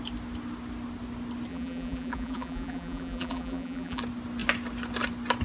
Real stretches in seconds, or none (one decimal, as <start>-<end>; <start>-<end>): 0.0-1.5; 4.0-5.4